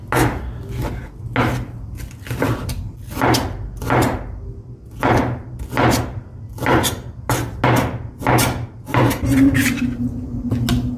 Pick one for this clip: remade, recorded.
recorded